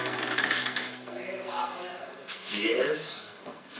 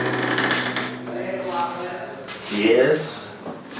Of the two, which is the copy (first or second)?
first